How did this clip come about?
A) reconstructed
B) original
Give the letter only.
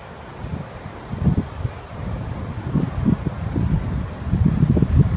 B